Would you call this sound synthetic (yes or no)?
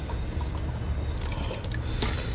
no